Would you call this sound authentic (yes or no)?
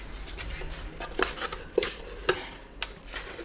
yes